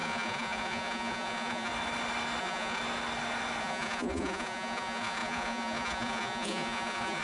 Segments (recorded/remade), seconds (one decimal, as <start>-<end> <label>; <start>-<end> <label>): 0.0-1.7 remade; 1.7-2.4 recorded; 2.4-2.8 remade; 2.8-3.6 recorded; 3.6-7.2 remade